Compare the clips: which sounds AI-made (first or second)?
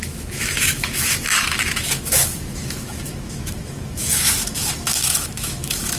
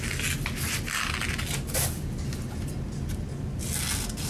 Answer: first